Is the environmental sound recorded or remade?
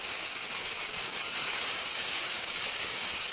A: remade